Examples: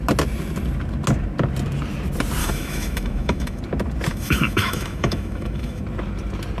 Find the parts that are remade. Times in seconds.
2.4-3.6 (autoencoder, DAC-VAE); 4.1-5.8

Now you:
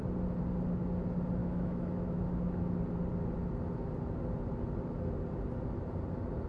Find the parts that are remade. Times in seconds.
1.4-2.7 (autoencoder, DAC-VAE)

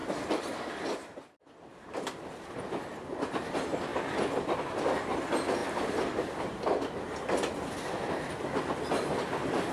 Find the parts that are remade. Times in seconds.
none

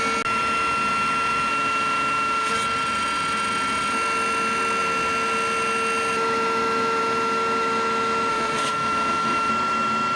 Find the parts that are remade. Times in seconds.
1.5-2.5 (autoencoder, DAC-VAE); 8.3-9.5

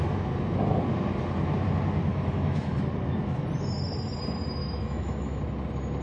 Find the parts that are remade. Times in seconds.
2.1-2.8 (autoencoder, DAC-VAE); 4.6-5.4

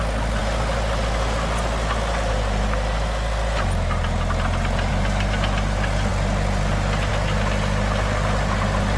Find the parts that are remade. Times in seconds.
none